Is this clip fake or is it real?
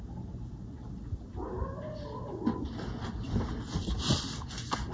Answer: real